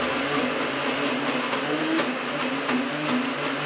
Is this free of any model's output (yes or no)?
yes